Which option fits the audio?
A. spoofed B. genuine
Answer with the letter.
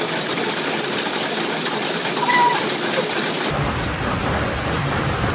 B